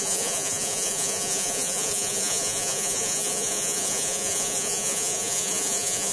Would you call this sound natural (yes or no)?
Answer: no